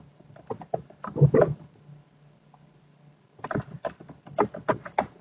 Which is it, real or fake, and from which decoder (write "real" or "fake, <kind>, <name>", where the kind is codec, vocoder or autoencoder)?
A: real